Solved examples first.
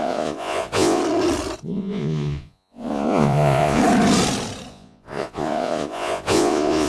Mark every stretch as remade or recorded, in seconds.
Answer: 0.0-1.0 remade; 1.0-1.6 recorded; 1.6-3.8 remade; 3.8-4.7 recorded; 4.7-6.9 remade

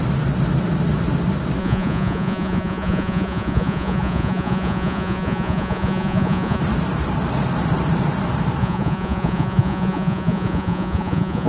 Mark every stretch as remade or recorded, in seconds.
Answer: 0.0-1.6 recorded; 1.6-6.6 remade; 6.6-8.6 recorded; 8.6-11.5 remade

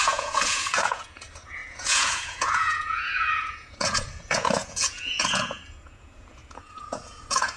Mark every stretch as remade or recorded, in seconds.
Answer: 0.0-7.6 remade

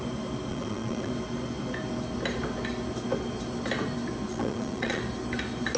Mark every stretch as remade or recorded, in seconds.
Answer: 0.0-0.5 recorded; 0.5-1.1 remade; 1.1-4.3 recorded; 4.3-5.0 remade; 5.0-5.8 recorded

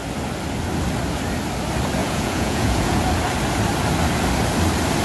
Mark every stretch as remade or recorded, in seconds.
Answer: 0.0-2.0 recorded; 2.0-3.0 remade; 3.0-5.0 recorded

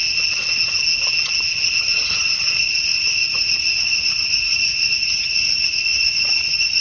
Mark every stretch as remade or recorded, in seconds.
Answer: 0.0-1.8 recorded; 1.8-6.8 remade